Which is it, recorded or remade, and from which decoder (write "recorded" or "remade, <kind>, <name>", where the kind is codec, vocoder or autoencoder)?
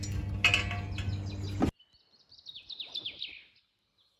recorded